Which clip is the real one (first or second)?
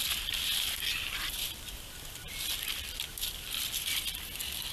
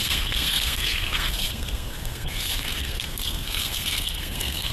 first